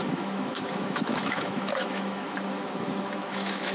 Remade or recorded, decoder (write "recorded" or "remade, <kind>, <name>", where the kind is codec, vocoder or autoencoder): remade, autoencoder, DAC-VAE